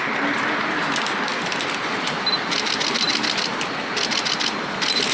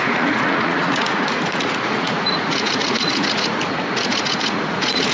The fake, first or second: second